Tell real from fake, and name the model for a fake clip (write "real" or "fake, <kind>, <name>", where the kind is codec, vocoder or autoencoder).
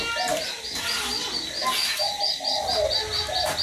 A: real